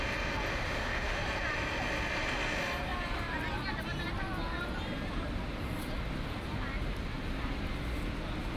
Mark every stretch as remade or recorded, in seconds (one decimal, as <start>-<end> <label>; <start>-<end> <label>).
0.0-0.5 recorded; 0.5-1.2 remade; 1.2-8.6 recorded